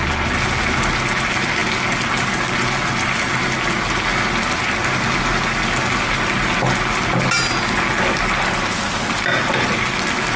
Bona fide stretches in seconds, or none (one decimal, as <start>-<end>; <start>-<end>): 0.0-10.4